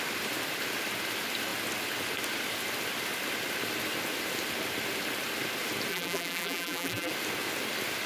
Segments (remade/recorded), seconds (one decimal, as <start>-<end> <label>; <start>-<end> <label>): 0.0-5.9 recorded; 5.9-7.1 remade; 7.1-8.1 recorded